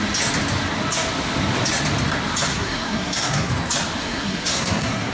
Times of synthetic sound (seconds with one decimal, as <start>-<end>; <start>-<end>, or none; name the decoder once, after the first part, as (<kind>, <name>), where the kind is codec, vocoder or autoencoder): 2.5-3.5 (codec, SNAC); 4.0-5.1